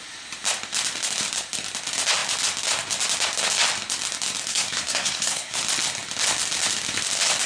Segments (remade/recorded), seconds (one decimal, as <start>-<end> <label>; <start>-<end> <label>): 0.0-4.5 recorded; 4.5-5.6 remade; 5.6-7.5 recorded